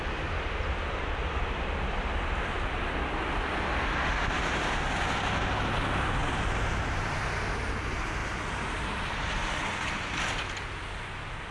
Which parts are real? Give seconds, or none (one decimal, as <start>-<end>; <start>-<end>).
0.0-6.2; 7.2-11.5